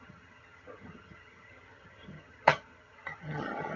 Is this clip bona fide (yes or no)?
no